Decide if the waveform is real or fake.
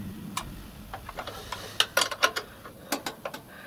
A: real